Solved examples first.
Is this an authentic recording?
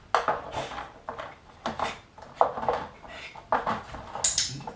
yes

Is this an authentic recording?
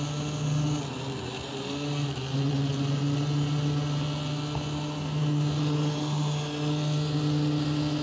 yes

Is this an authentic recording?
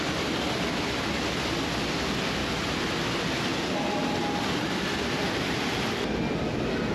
yes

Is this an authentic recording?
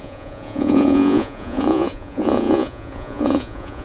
no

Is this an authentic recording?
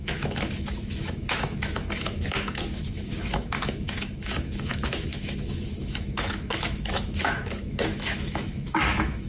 no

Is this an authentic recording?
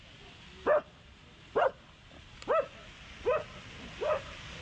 yes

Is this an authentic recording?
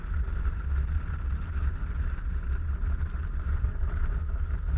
no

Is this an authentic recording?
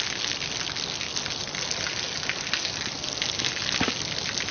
yes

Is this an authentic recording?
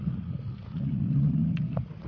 no